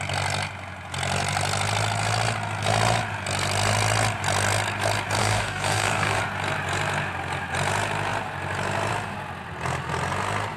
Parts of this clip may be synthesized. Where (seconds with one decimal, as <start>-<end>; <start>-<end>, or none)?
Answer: 5.2-6.2